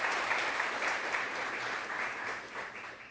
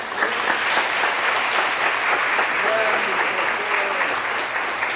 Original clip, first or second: second